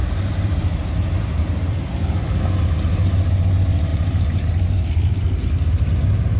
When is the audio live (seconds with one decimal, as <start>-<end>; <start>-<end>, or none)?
2.6-3.9; 4.5-6.4